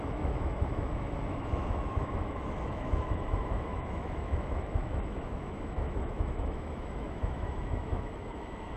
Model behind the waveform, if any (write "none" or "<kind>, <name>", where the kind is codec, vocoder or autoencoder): autoencoder, DAC-VAE